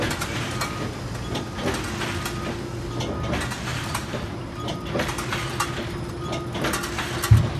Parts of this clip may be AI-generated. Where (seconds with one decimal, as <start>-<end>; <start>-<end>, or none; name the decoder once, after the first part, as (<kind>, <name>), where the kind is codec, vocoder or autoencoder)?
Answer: 3.7-4.8 (vocoder, BigVGAN v2)